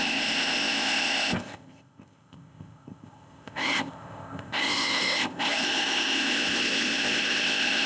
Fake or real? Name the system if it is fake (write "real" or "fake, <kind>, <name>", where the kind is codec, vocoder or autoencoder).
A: fake, codec, ZipCodec